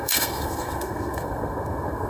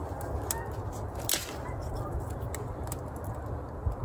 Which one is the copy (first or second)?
first